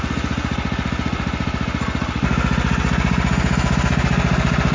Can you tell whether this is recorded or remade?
recorded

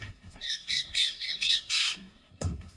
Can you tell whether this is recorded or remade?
remade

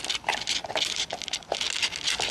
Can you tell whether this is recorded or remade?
recorded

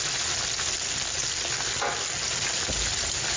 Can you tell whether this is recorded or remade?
recorded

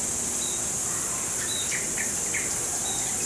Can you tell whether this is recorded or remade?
recorded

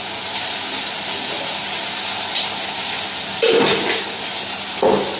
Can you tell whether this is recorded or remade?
recorded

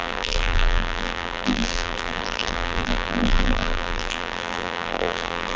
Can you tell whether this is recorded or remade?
remade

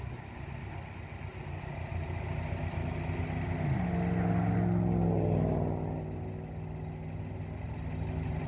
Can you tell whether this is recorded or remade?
recorded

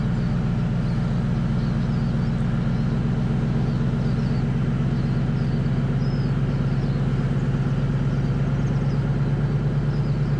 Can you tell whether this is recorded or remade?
recorded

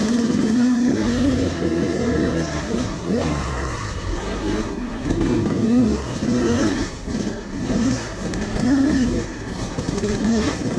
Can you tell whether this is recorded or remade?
remade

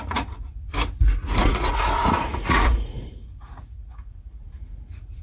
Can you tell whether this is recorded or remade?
remade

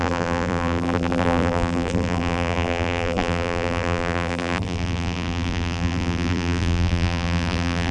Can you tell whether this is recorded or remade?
remade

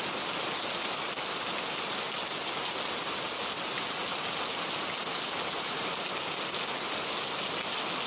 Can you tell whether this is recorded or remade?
recorded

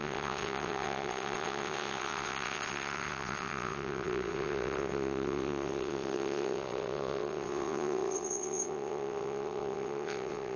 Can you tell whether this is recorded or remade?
remade